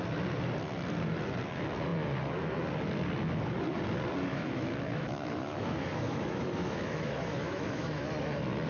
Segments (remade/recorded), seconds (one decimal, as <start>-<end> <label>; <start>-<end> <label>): 0.0-4.3 recorded; 4.3-8.0 remade; 8.0-8.7 recorded